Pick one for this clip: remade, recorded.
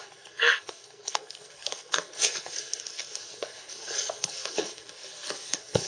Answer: remade